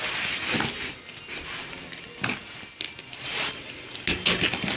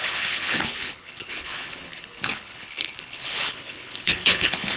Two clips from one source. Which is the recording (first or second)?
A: first